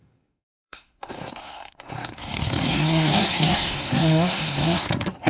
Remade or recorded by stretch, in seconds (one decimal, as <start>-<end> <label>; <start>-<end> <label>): 0.0-5.3 remade

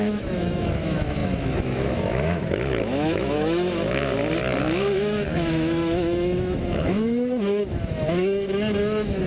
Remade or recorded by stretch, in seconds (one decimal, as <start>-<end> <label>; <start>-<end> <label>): 0.0-4.1 remade; 4.1-4.6 recorded; 4.6-9.3 remade